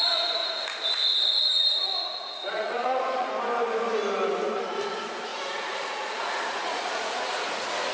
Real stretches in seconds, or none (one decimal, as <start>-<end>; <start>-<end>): 0.0-0.4; 3.3-5.3